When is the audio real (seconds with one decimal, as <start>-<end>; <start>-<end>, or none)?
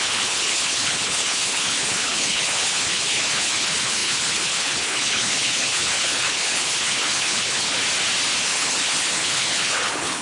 7.8-8.4